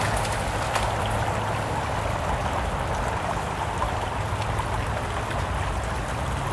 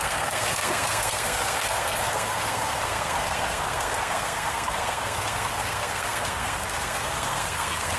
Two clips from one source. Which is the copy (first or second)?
second